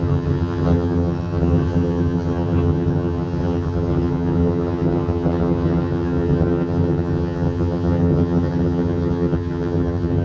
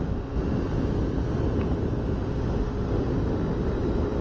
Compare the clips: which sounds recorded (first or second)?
second